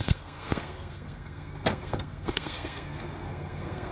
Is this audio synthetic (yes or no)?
yes